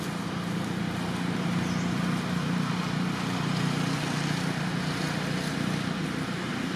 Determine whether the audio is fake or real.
real